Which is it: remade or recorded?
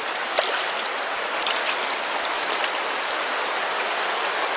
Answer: recorded